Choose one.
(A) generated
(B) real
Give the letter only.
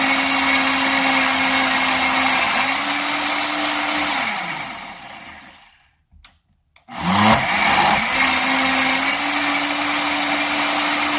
B